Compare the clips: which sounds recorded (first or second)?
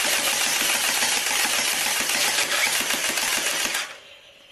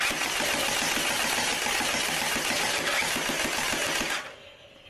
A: second